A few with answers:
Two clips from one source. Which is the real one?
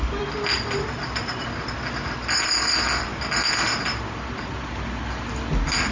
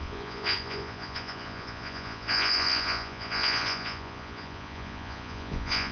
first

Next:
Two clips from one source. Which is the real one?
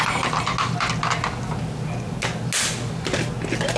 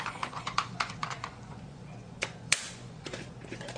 first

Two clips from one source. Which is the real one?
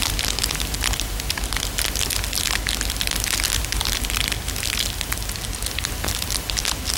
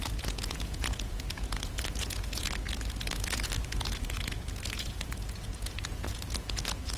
first